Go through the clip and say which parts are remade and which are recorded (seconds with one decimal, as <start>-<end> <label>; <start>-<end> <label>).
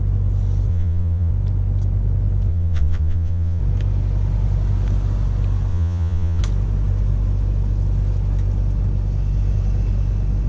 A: 0.0-0.7 recorded; 0.7-1.3 remade; 1.3-2.5 recorded; 2.5-3.6 remade; 3.6-5.7 recorded; 5.7-6.4 remade; 6.4-10.5 recorded